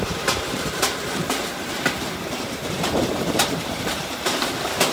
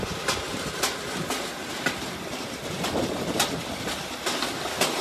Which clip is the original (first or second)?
second